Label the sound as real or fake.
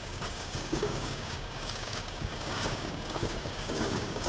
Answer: fake